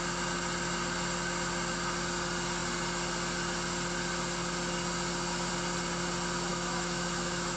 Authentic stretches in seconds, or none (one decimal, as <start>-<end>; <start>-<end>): 0.0-6.5

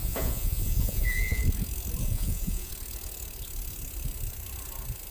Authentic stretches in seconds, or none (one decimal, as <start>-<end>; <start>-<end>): 1.4-2.0; 2.7-5.1

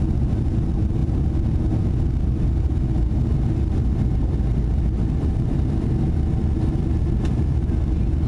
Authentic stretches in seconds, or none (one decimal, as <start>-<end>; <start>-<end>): 0.0-8.3

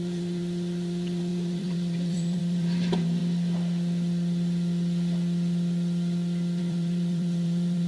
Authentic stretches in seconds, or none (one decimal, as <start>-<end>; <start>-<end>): 3.2-6.6

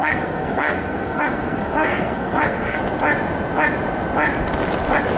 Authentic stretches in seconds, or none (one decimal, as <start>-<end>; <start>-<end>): 2.8-5.2

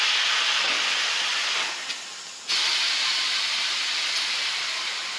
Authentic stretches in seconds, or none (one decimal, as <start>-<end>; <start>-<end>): 0.0-5.2